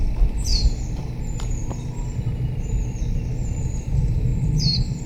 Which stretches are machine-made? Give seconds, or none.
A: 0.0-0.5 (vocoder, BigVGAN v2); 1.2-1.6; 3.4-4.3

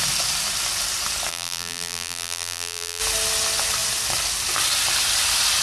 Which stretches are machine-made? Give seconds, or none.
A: 1.3-3.0 (vocoder, BigVGAN v2)

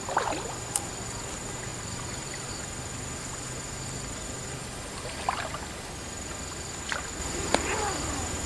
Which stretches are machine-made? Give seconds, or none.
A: 1.7-2.5 (vocoder, BigVGAN v2)